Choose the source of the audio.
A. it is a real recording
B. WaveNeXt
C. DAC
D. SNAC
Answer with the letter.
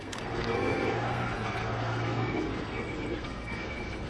D